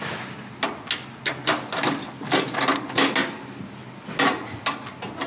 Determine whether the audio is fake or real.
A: real